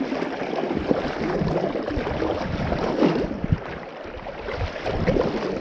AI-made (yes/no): yes